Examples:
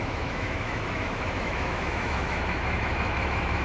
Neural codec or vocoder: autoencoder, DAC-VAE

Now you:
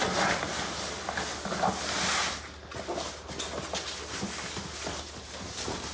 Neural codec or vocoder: none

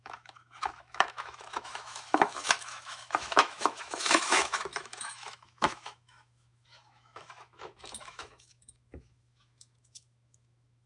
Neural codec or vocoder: autoencoder, DAC-VAE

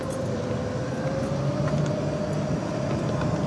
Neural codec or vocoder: none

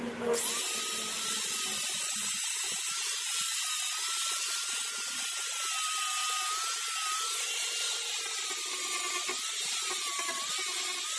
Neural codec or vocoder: none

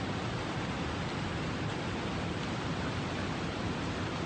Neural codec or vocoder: none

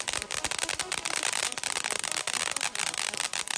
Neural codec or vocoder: none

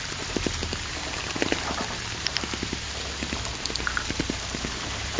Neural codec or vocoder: none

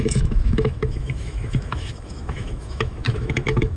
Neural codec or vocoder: autoencoder, DAC-VAE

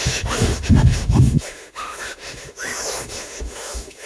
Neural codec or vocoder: autoencoder, DAC-VAE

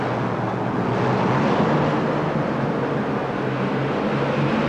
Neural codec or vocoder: none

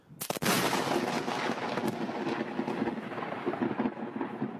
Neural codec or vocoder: none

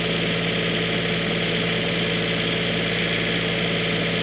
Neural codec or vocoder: none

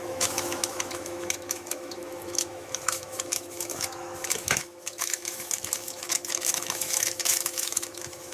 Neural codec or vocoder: autoencoder, DAC-VAE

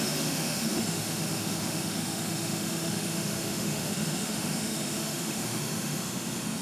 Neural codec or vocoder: autoencoder, DAC-VAE